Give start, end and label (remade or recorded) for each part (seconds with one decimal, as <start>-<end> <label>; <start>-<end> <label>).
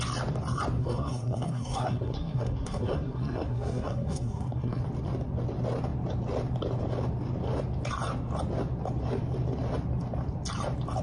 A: 0.0-0.8 recorded; 0.8-4.8 remade; 4.8-11.0 recorded